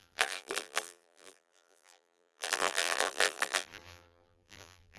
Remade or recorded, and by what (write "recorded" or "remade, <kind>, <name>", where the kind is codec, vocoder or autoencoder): remade, vocoder, BigVGAN v2